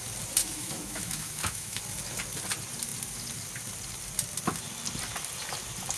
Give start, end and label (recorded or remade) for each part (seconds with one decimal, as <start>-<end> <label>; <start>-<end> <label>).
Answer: 0.0-0.4 recorded; 0.4-1.8 remade; 1.8-6.0 recorded